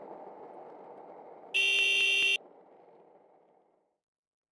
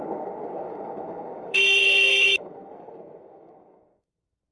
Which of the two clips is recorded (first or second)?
first